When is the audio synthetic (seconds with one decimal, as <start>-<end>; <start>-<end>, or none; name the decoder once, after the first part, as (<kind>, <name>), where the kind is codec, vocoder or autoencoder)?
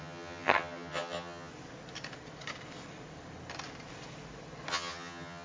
0.0-1.5 (vocoder, HiFi-GAN); 4.7-5.4